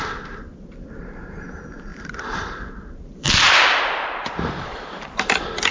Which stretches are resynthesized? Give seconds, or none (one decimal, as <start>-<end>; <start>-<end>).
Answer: 1.9-5.3